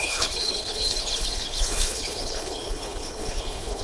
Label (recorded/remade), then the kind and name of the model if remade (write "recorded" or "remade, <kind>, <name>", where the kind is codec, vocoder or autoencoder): remade, codec, HILCodec